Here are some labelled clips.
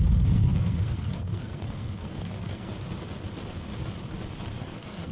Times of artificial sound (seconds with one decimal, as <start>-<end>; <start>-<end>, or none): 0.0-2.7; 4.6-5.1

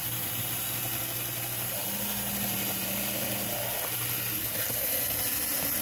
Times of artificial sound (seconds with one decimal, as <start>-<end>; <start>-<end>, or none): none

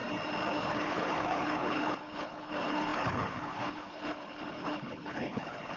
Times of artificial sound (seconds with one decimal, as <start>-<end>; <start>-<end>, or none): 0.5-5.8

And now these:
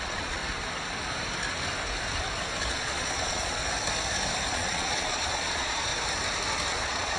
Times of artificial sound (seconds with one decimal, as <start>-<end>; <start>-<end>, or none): 0.0-0.4; 2.7-3.6; 4.5-5.9; 6.7-7.2

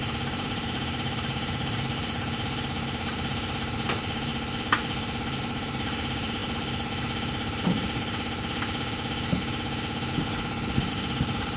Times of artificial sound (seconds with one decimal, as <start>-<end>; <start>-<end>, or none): 0.0-4.3; 5.4-6.4; 10.9-11.6

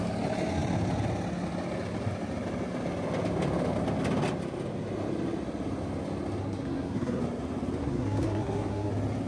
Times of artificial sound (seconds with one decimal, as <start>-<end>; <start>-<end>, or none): 6.4-7.2; 7.8-8.9

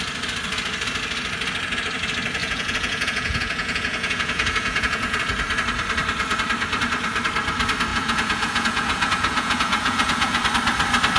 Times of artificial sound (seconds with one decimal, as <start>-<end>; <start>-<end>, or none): 2.4-5.2; 7.9-10.4

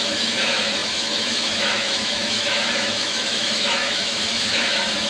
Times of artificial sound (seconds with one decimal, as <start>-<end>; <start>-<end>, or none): 0.0-5.1